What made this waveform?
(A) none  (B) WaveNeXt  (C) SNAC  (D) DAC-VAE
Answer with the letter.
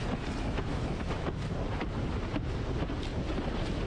A